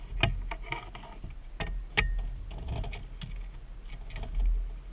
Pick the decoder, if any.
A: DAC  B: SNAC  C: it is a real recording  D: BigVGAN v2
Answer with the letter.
C